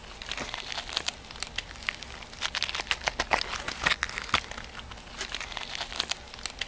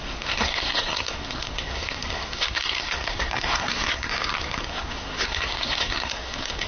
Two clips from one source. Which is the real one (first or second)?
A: first